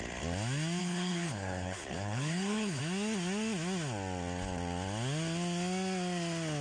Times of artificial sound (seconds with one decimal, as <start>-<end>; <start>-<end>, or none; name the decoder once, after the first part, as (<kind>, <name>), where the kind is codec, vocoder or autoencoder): 0.8-2.8 (codec, HILCodec)